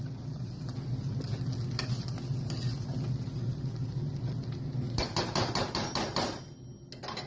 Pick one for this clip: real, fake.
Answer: real